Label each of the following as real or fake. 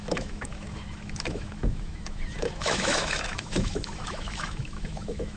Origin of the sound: fake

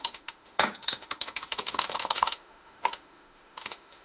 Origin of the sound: fake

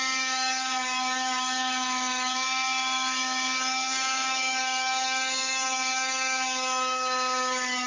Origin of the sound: fake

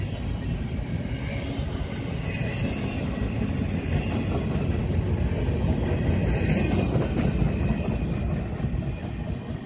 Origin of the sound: real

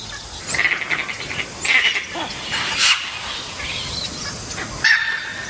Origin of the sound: real